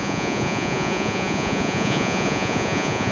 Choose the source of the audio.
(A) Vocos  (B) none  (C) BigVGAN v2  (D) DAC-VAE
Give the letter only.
A